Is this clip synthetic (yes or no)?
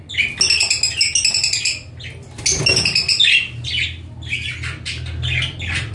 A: no